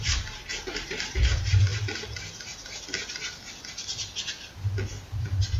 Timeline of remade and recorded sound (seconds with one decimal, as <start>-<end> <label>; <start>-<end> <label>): 0.0-1.7 remade; 1.7-5.1 recorded; 5.1-5.6 remade